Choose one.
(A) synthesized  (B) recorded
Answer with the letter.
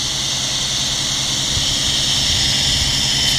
B